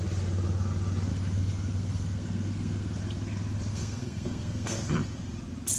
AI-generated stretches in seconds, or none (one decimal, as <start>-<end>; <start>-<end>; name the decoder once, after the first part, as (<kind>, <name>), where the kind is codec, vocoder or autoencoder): 1.1-3.0 (codec, SNAC); 3.7-4.9